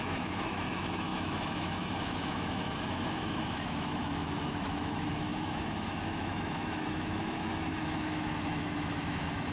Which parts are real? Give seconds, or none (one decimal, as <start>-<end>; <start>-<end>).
none